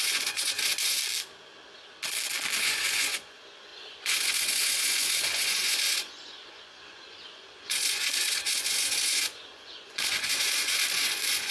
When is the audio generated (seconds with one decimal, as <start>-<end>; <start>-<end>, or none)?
0.0-1.0; 2.6-11.5